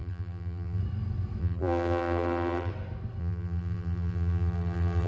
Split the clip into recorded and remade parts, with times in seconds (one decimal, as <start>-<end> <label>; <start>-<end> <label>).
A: 0.0-0.8 remade; 0.8-1.4 recorded; 1.4-2.7 remade; 2.7-3.2 recorded; 3.2-5.1 remade